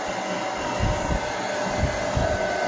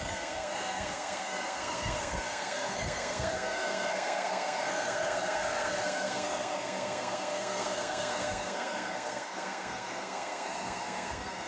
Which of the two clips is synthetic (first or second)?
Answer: second